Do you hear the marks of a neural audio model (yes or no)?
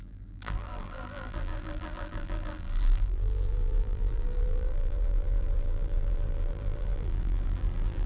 yes